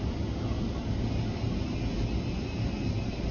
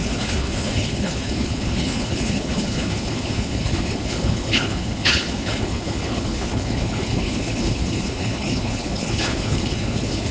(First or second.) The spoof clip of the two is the second